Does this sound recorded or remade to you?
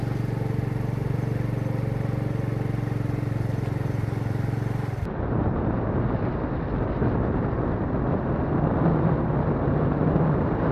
recorded